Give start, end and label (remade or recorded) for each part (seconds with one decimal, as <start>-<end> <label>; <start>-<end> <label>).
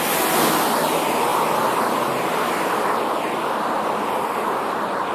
0.0-5.1 recorded